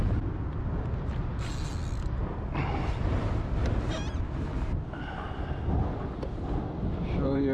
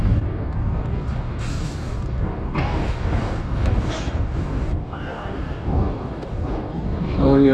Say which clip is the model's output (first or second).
second